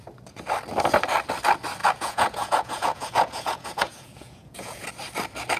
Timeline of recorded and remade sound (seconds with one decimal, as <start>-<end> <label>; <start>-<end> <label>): 0.0-1.8 recorded; 1.8-4.9 remade; 4.9-5.6 recorded